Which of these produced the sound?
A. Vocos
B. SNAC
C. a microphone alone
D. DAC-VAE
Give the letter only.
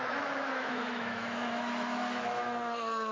D